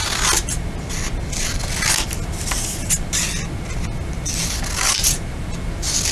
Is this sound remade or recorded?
recorded